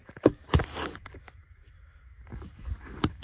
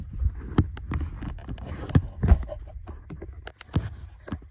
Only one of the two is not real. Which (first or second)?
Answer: first